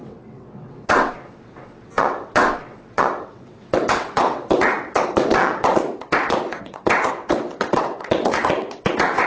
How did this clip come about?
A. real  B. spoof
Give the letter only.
B